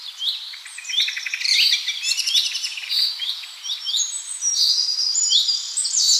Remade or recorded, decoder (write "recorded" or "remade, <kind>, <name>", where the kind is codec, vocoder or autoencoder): remade, vocoder, BigVGAN v2